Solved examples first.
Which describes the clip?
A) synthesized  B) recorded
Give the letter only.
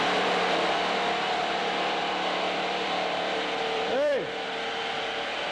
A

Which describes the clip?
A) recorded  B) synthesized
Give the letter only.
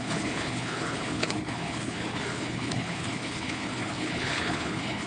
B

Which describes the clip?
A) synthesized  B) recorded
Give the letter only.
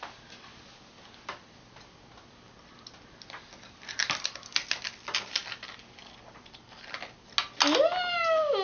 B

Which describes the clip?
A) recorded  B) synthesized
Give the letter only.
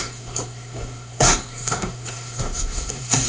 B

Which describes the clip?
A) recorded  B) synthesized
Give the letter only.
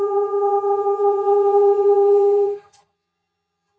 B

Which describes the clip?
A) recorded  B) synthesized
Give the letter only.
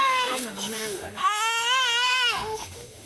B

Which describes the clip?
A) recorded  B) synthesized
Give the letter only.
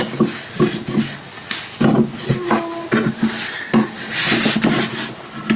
A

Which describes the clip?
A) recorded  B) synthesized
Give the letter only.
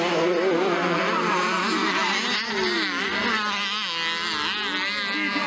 A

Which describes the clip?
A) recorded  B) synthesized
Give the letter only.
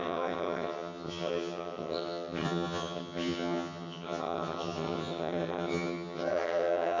B